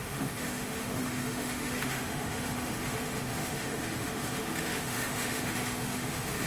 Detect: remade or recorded remade